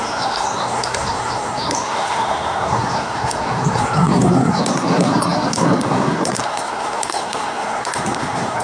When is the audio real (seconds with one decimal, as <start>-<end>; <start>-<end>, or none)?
none